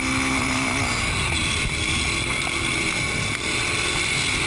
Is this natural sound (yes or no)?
yes